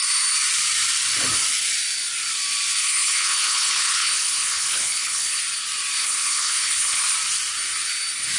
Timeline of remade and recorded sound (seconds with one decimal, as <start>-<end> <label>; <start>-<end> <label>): 0.0-2.8 recorded; 2.8-5.4 remade; 5.4-6.0 recorded; 6.0-7.0 remade; 7.0-8.4 recorded